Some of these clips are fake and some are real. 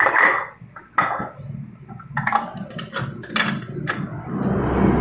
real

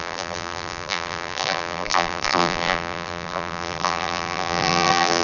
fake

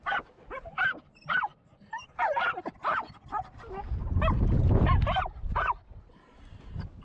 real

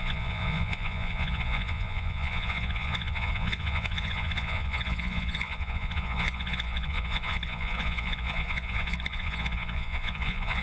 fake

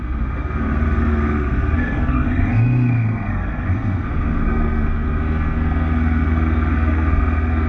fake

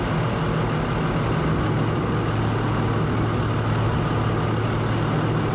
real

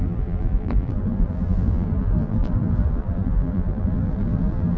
fake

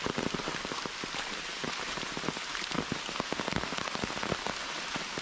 real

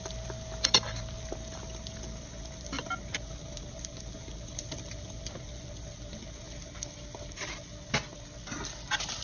real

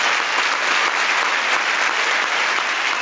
real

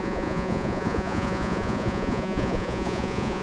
fake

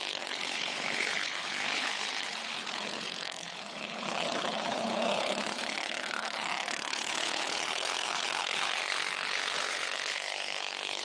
fake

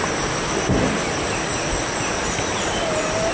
real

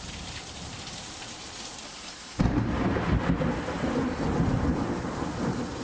fake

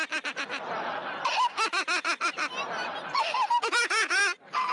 real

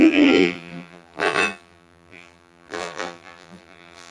fake